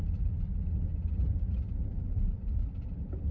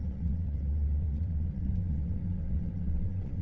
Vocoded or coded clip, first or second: second